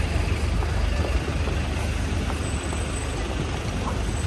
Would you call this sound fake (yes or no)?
no